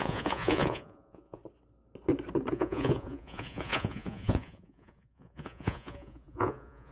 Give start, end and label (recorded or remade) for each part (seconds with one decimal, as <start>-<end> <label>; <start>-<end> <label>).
0.0-1.4 remade; 1.4-2.5 recorded; 2.5-6.9 remade